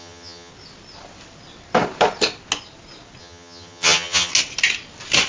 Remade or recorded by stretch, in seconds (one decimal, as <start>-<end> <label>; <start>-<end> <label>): 0.0-0.5 remade; 0.5-3.2 recorded; 3.2-4.3 remade; 4.3-5.3 recorded